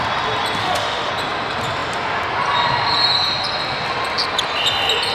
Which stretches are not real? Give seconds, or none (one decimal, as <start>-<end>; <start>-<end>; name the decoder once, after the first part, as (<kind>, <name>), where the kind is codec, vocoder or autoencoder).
0.6-1.1 (autoencoder, DAC-VAE)